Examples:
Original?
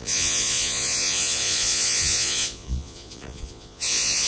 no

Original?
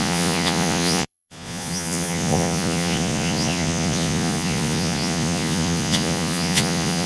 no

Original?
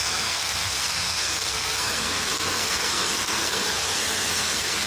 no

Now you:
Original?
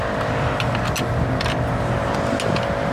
yes